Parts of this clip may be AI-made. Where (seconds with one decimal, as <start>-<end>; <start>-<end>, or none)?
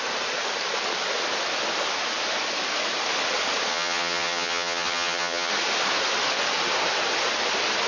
3.7-5.5